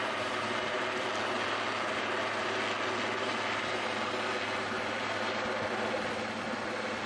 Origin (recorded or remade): recorded